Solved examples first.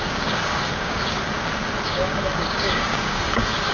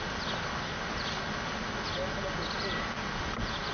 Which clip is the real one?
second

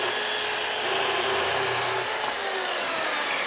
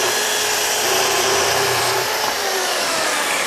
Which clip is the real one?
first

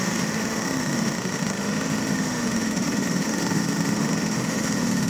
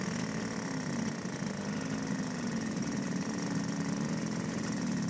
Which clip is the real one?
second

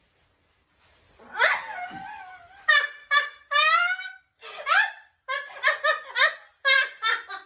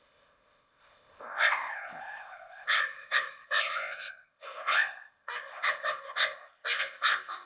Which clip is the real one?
first